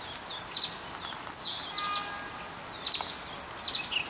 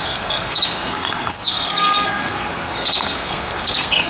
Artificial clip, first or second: second